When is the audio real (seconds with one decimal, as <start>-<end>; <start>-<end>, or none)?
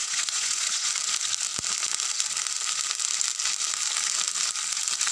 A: 0.9-5.1